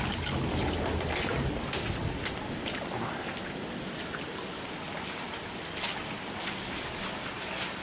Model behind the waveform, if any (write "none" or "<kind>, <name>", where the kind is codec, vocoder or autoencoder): none